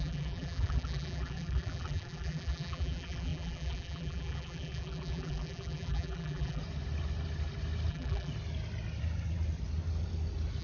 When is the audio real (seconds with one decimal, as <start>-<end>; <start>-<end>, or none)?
6.6-7.9; 8.3-10.6